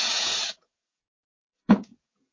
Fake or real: fake